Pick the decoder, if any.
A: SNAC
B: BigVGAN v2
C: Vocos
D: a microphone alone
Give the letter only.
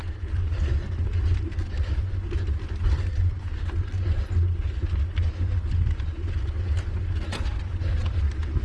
D